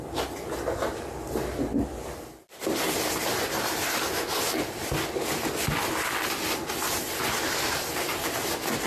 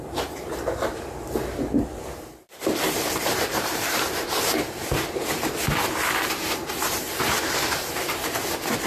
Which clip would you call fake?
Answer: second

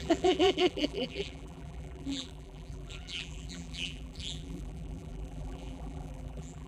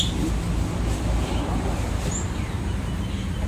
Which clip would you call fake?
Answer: first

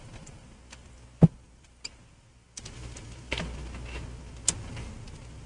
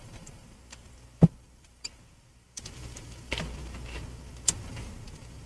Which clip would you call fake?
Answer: second